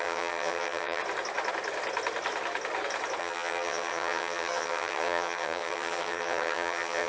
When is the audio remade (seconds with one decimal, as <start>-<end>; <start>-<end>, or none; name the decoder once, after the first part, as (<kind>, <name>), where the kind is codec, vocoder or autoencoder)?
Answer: 0.0-1.0 (vocoder, HiFi-GAN); 3.2-7.1